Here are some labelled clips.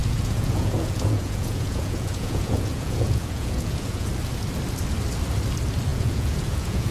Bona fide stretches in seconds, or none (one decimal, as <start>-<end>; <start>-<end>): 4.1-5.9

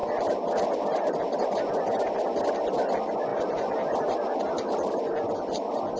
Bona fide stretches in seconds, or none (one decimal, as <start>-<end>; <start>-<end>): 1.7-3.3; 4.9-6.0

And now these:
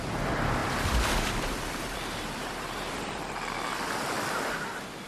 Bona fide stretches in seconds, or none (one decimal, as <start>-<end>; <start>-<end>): 0.0-0.6; 3.7-5.1

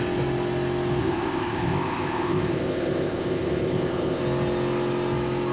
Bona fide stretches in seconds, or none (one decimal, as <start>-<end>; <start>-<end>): 0.0-1.0; 4.2-5.5